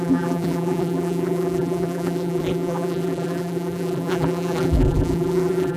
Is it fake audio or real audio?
fake